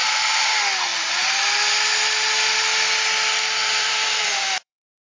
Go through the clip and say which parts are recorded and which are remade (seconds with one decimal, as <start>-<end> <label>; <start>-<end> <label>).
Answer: 0.0-0.5 remade; 0.5-0.9 recorded; 0.9-1.4 remade; 1.4-3.6 recorded; 3.6-5.0 remade